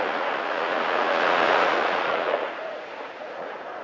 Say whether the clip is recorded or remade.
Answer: remade